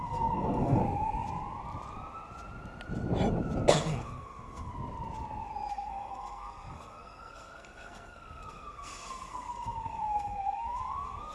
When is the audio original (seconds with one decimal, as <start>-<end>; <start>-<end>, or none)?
0.8-3.7; 4.7-5.7